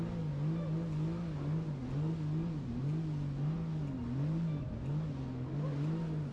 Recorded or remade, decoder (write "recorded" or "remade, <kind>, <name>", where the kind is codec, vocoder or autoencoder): recorded